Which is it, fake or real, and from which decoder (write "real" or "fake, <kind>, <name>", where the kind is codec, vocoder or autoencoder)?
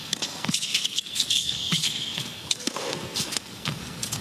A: fake, codec, SNAC